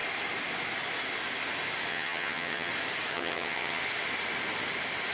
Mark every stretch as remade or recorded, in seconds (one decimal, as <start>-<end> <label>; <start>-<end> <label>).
0.0-1.9 recorded; 1.9-2.7 remade; 2.7-3.1 recorded; 3.1-3.8 remade; 3.8-5.1 recorded